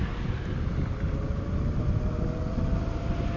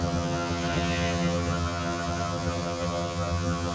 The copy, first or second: second